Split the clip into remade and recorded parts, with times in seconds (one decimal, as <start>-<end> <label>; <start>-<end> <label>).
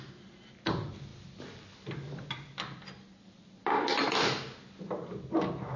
0.0-5.8 recorded